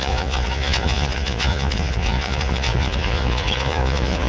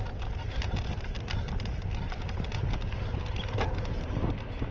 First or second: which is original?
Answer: second